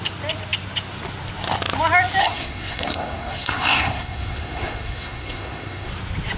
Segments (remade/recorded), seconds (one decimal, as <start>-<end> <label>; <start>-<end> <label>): 0.0-2.2 recorded; 2.2-5.9 remade; 5.9-6.4 recorded

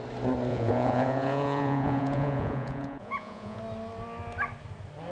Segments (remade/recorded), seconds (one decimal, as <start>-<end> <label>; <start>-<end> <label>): 0.0-0.5 recorded; 0.5-3.6 remade; 3.6-5.1 recorded

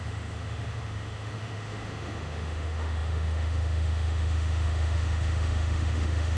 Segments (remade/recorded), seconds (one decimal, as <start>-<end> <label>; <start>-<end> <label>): 0.0-6.4 remade

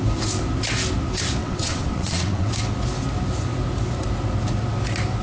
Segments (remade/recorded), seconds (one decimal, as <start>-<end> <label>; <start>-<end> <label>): 0.0-1.4 recorded; 1.4-2.5 remade; 2.5-5.2 recorded

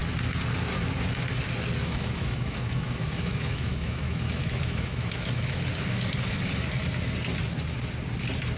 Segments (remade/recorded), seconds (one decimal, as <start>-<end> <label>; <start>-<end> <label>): 0.0-1.8 recorded; 1.8-5.6 remade; 5.6-8.6 recorded

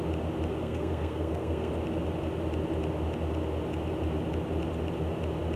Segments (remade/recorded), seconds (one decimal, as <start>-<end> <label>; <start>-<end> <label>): 0.0-0.5 recorded; 0.5-1.7 remade; 1.7-5.6 recorded

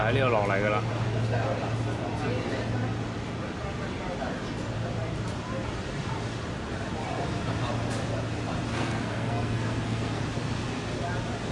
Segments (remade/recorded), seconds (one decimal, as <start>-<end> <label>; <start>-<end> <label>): 0.0-8.7 recorded; 8.7-10.2 remade; 10.2-11.5 recorded

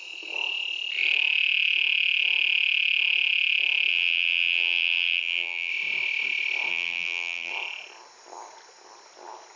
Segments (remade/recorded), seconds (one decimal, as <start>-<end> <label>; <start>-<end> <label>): 0.0-3.9 recorded; 3.9-5.7 remade; 5.7-6.7 recorded; 6.7-7.5 remade; 7.5-9.6 recorded